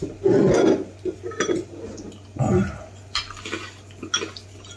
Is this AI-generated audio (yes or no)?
no